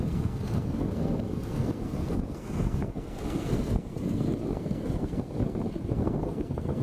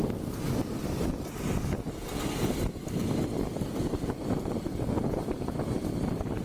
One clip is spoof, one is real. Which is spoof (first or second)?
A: first